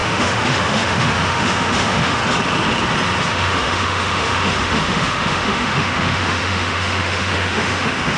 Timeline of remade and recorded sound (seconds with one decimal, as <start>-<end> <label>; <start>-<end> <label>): 0.0-2.2 remade; 2.2-3.3 recorded; 3.3-8.2 remade